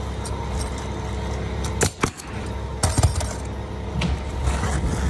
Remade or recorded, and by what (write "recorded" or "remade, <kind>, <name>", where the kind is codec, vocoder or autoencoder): recorded